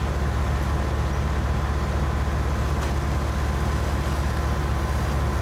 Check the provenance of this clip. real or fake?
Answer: real